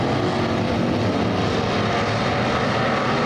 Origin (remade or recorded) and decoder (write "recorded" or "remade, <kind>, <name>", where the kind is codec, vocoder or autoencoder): recorded